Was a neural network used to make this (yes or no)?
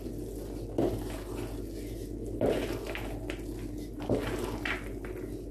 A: no